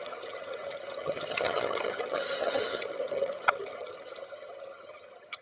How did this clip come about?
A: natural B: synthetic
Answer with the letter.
B